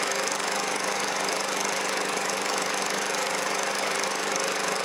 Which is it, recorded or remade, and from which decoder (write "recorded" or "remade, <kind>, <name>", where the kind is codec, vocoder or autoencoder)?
remade, codec, DAC